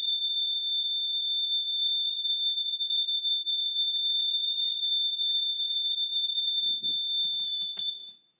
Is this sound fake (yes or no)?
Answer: yes